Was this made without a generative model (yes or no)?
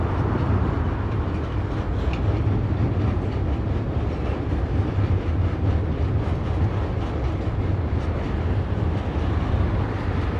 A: yes